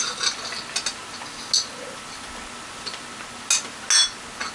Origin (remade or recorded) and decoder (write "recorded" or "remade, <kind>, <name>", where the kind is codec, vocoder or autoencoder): recorded